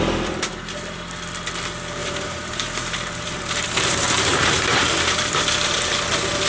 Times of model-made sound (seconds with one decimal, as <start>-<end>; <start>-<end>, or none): 2.0-5.9